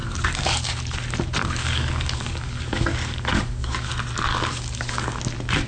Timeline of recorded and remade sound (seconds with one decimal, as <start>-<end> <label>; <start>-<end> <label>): 0.0-0.8 remade; 0.8-1.4 recorded; 1.4-3.9 remade; 3.9-4.3 recorded; 4.3-5.2 remade; 5.2-5.7 recorded